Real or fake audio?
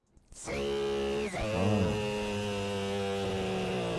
real